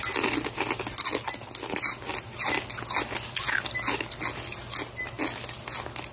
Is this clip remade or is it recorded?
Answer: recorded